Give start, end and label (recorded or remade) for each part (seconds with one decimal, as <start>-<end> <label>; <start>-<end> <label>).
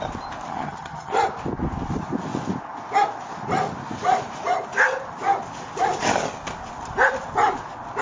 0.0-0.5 recorded; 0.5-1.1 remade; 1.1-8.0 recorded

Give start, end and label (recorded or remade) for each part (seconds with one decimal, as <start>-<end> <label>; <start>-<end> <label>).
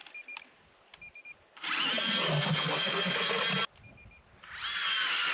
0.0-2.4 recorded; 2.4-3.4 remade; 3.4-5.3 recorded